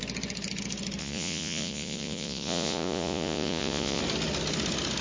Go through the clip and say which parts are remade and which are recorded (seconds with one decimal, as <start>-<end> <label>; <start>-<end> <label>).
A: 0.0-1.0 recorded; 1.0-4.0 remade; 4.0-5.0 recorded